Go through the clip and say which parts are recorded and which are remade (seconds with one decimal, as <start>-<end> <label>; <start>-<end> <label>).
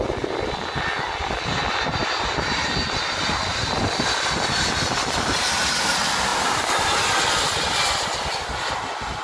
0.0-9.2 recorded